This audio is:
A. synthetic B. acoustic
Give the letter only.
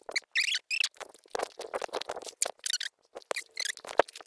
B